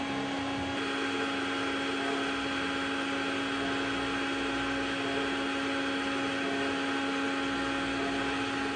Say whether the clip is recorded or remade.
recorded